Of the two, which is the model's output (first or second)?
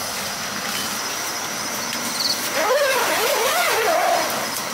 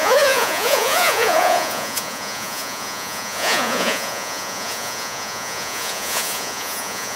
second